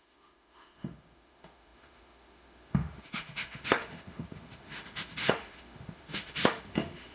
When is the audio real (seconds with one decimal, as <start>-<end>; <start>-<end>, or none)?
none